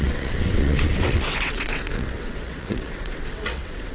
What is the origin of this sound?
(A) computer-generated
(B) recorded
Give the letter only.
A